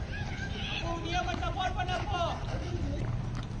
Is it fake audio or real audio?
real